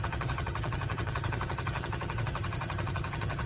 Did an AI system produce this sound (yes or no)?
yes